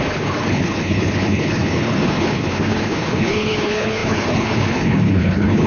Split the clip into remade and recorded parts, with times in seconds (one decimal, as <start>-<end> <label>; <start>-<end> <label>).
0.0-5.7 remade